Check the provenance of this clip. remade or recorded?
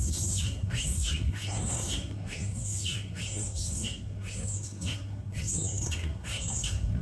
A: remade